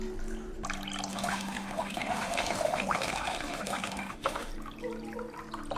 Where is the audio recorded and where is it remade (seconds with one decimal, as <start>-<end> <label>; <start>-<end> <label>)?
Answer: 0.0-1.1 recorded; 1.1-4.5 remade; 4.5-5.8 recorded